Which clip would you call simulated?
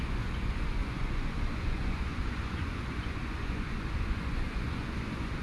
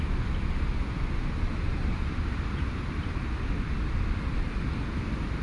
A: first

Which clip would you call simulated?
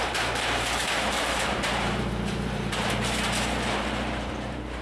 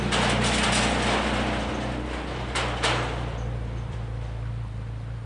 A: first